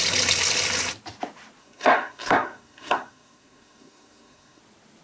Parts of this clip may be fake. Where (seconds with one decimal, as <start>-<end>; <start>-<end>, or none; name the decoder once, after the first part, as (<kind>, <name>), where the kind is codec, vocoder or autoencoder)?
1.6-4.6 (codec, SNAC)